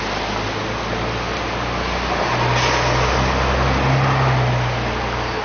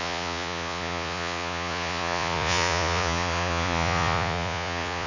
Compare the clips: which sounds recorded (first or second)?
first